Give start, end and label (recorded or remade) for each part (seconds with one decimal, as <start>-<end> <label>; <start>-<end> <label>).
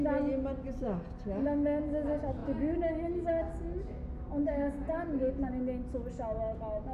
0.0-6.9 recorded